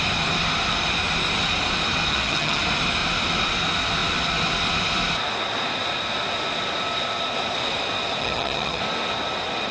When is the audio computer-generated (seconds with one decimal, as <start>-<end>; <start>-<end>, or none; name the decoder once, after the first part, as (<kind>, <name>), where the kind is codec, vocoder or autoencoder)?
2.1-2.6 (vocoder, HiFi-GAN); 8.2-8.8